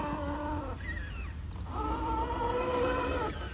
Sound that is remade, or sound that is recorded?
recorded